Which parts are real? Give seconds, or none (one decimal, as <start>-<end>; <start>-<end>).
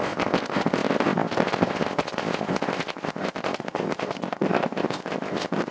none